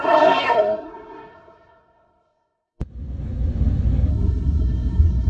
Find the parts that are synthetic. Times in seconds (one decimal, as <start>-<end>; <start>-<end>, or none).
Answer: 0.0-2.8; 4.1-5.3